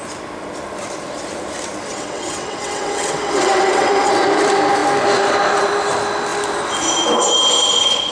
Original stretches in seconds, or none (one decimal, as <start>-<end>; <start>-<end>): 0.0-1.9; 4.1-8.1